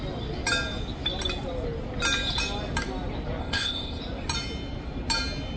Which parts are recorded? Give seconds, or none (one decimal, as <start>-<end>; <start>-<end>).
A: 0.0-3.4; 4.0-5.6